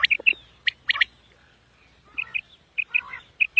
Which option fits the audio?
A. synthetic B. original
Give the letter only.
B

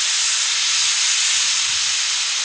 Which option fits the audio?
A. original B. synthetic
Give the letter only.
A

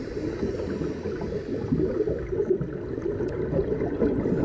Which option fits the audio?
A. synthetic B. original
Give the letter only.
B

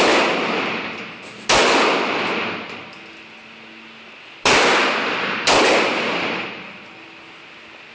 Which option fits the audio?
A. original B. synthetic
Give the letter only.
A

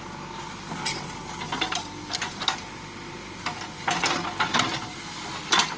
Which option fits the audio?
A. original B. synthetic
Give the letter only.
A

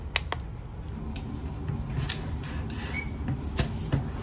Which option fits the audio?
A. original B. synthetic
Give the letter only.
A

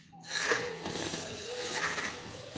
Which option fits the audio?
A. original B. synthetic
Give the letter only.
B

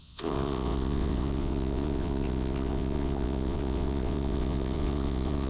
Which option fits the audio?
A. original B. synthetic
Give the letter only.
B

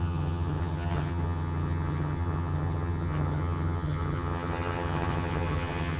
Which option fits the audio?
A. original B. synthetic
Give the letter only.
B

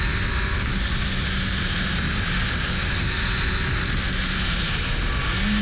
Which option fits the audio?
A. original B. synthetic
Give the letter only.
A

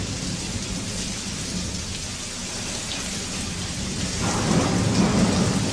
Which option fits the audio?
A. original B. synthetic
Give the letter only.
A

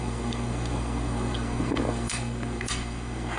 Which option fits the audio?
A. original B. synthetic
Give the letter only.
B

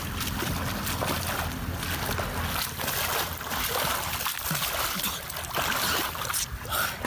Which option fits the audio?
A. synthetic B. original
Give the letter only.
B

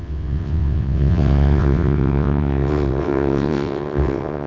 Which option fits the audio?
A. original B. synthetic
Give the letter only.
B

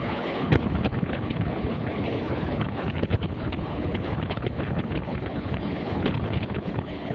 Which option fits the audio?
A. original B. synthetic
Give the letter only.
B